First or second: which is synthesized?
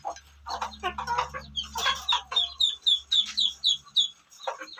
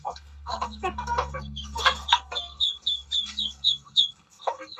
second